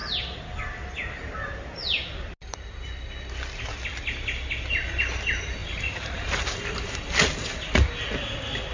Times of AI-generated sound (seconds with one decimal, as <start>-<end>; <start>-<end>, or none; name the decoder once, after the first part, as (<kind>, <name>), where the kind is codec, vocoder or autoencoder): 5.6-7.0 (vocoder, BigVGAN v2)